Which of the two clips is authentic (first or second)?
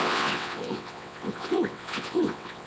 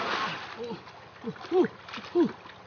second